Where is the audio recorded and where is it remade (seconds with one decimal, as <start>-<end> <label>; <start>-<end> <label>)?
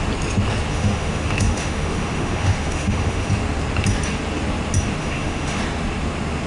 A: 0.0-0.7 recorded; 0.7-3.3 remade; 3.3-5.0 recorded; 5.0-5.6 remade; 5.6-6.5 recorded